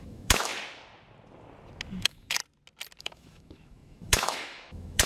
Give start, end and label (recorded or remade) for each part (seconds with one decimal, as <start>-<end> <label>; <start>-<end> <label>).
0.0-0.5 remade; 0.5-2.0 recorded; 2.0-2.4 remade; 2.4-3.0 recorded; 3.0-5.1 remade